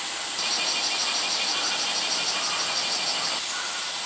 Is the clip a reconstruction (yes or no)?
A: no